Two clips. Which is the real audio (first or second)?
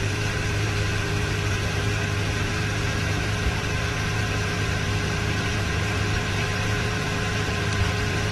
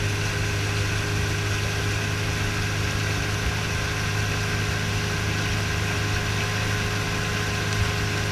second